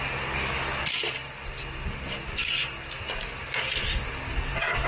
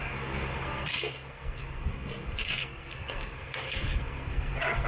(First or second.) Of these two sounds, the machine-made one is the second